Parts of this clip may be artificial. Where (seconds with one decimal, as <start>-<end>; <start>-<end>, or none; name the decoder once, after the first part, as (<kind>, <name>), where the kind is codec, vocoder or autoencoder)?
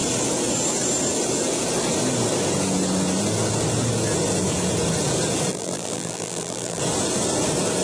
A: 5.5-6.8 (vocoder, BigVGAN v2)